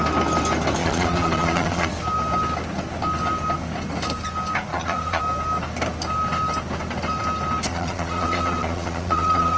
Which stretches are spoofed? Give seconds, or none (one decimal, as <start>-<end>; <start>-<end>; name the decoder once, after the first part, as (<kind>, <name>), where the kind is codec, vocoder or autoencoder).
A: 0.8-1.9 (vocoder, Vocos); 4.7-5.2; 7.7-9.6